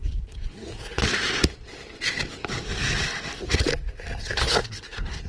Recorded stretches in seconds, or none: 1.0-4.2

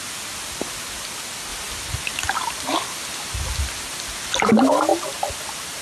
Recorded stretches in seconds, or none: 0.0-5.8

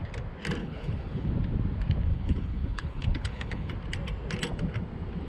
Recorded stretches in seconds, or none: 0.0-0.6; 1.3-2.1; 3.7-5.3

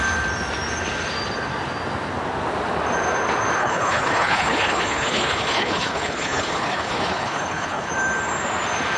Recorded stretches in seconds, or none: 0.0-3.6; 7.9-9.0

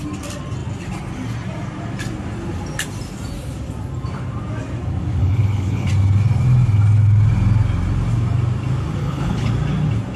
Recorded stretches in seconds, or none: 0.0-5.2; 5.9-9.0; 9.5-10.2